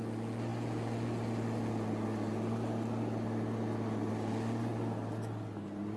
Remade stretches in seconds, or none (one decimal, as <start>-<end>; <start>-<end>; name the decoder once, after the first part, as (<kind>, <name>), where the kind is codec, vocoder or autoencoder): none

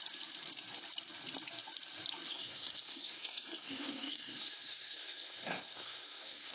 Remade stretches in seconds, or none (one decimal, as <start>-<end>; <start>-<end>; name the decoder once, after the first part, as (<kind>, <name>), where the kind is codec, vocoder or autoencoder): 2.3-6.5 (codec, SNAC)